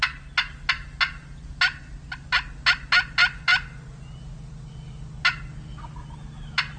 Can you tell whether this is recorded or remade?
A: recorded